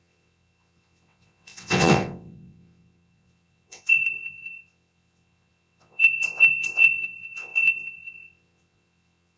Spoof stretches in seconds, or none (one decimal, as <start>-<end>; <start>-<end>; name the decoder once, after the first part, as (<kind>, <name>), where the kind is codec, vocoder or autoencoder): 0.0-9.4 (vocoder, WaveNeXt)